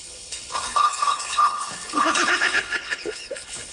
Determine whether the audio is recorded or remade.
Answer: remade